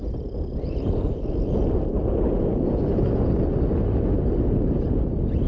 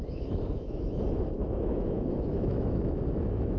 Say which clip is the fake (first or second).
second